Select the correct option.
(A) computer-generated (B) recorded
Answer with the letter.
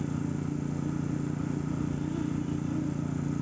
B